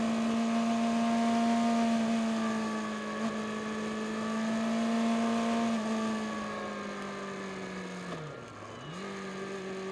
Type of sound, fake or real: real